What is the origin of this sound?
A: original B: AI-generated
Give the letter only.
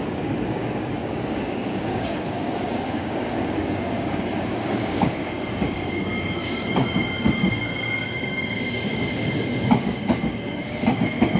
B